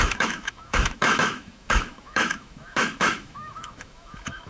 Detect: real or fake fake